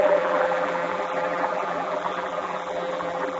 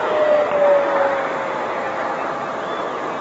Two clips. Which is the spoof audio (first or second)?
first